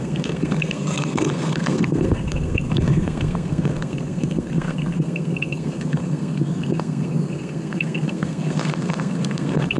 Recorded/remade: remade